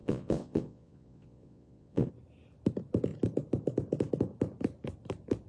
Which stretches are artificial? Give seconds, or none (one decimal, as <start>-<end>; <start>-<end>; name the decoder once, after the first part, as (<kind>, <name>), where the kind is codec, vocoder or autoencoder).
0.0-2.1 (vocoder, Vocos)